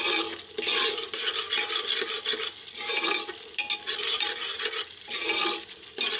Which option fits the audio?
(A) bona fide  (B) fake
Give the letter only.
A